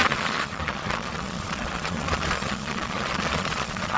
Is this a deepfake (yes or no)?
yes